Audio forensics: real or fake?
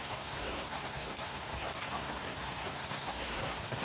fake